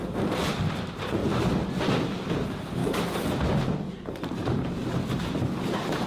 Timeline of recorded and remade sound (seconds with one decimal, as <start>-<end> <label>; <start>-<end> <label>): 0.0-1.2 remade; 1.2-2.1 recorded; 2.1-2.8 remade; 2.8-4.2 recorded; 4.2-6.1 remade